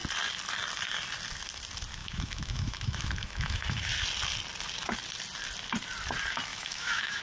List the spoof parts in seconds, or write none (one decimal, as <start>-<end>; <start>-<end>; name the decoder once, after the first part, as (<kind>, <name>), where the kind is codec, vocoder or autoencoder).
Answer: 2.0-3.9 (autoencoder, DAC-VAE); 6.5-7.2